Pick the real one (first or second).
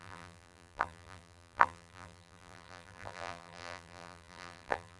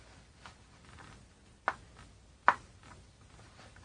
second